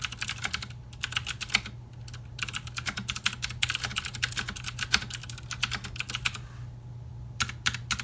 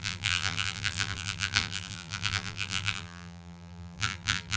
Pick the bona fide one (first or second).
first